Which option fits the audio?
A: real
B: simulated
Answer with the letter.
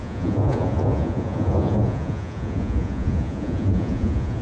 B